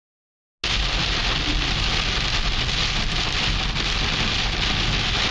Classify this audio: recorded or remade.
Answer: recorded